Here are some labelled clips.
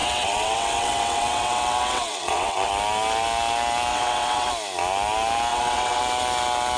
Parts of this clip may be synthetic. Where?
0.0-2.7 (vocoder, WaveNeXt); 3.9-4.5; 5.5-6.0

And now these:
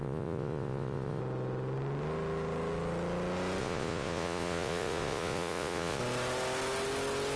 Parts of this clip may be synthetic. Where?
0.0-1.2 (vocoder, Vocos); 3.6-6.0

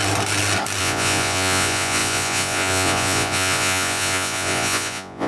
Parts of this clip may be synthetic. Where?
0.8-5.3 (vocoder, Vocos)

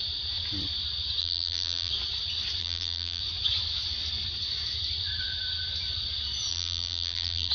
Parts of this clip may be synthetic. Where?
1.2-1.9 (vocoder, BigVGAN v2); 2.6-3.2; 6.5-7.5